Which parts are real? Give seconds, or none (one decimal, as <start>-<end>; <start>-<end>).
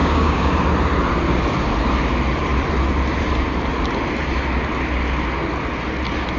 0.5-6.4